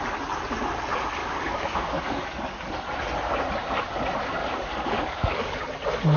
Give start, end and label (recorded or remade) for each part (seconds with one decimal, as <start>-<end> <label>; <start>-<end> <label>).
0.0-1.2 recorded; 1.2-2.7 remade; 2.7-4.4 recorded; 4.4-5.6 remade; 5.6-6.2 recorded